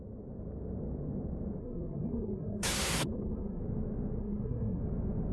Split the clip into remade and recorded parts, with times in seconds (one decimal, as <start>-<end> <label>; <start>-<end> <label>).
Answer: 0.0-1.6 recorded; 1.6-3.6 remade; 3.6-4.2 recorded; 4.2-4.8 remade; 4.8-5.3 recorded